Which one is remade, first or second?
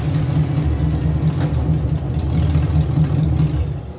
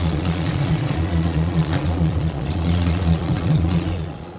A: second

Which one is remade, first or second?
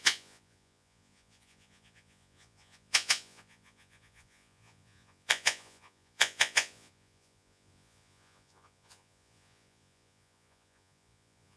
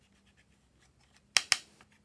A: first